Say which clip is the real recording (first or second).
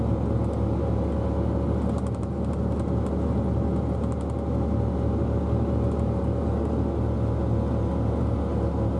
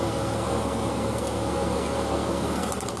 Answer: first